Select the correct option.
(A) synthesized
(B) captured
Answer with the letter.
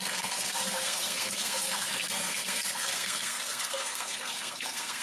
A